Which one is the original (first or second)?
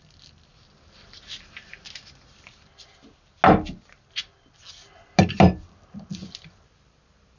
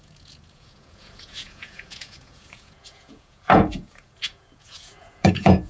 first